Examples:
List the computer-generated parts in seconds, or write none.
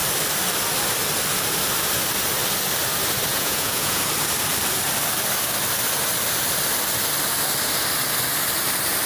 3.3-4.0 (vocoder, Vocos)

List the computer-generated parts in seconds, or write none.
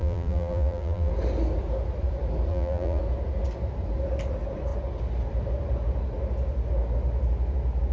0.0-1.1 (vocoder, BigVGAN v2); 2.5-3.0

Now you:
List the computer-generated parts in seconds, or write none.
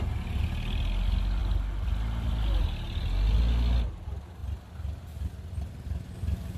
none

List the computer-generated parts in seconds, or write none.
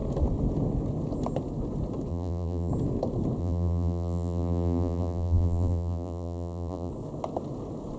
2.1-2.7 (vocoder, BigVGAN v2); 3.4-6.9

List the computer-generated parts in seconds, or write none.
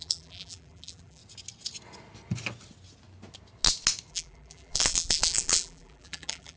0.0-1.2 (vocoder, BigVGAN v2); 4.1-6.6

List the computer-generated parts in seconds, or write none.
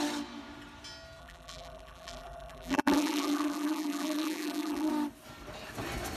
1.2-4.9 (vocoder, BigVGAN v2)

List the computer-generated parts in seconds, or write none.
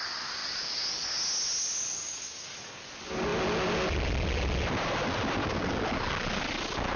1.8-2.8 (codec, DAC); 5.4-6.4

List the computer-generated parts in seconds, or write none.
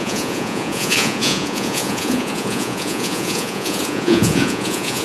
0.0-5.0 (vocoder, Vocos)